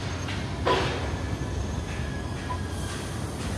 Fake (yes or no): no